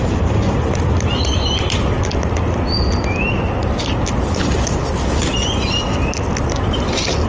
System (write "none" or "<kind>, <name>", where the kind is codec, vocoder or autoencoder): none